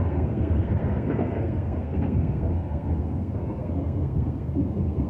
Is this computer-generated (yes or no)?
yes